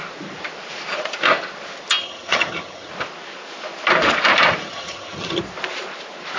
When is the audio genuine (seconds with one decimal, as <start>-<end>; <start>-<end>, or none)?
0.0-2.0; 2.9-4.6; 5.4-6.4